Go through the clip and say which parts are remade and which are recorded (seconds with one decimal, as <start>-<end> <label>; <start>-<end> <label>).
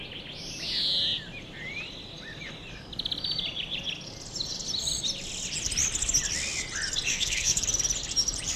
0.0-7.1 recorded; 7.1-7.6 remade; 7.6-8.6 recorded